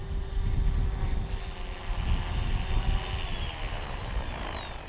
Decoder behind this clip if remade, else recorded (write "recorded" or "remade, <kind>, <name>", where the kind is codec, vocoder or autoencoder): recorded